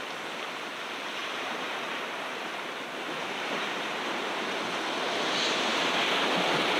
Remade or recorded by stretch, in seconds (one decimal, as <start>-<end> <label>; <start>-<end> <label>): 0.0-1.2 recorded; 1.2-4.6 remade; 4.6-6.8 recorded